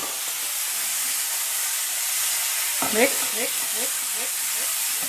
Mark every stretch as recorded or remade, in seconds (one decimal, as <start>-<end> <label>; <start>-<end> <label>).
0.0-1.3 recorded; 1.3-2.8 remade; 2.8-4.6 recorded; 4.6-5.1 remade